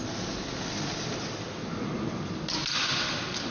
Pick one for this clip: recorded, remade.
recorded